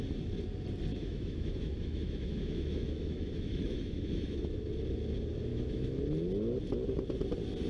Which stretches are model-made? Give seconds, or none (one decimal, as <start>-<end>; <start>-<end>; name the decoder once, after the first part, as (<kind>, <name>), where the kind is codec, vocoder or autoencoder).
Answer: 0.9-4.7 (autoencoder, DAC-VAE); 5.5-6.0